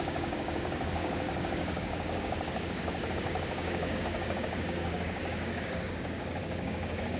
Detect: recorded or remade remade